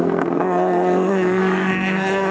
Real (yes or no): no